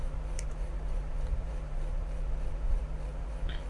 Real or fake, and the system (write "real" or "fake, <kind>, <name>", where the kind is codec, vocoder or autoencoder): fake, vocoder, BigVGAN v2